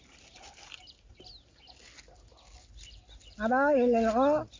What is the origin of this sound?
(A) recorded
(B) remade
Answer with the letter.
A